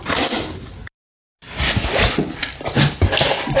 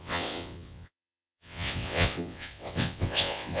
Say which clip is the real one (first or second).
first